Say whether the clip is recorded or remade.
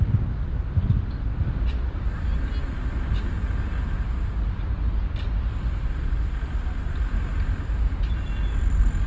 recorded